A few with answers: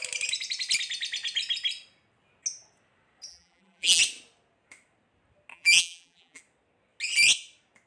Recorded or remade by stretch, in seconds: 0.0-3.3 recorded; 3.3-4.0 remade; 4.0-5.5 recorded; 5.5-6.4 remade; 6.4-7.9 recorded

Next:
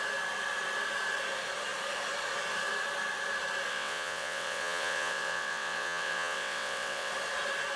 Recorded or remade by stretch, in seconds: 0.0-3.7 recorded; 3.7-7.1 remade; 7.1-7.8 recorded

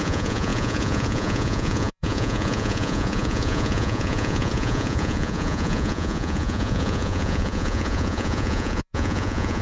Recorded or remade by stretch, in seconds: 0.0-9.6 remade

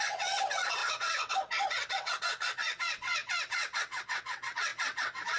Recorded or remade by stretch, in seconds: 0.0-5.4 remade

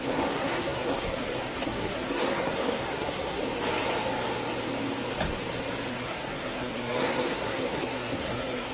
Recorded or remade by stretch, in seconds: 0.0-3.4 remade; 3.4-5.9 recorded; 5.9-8.7 remade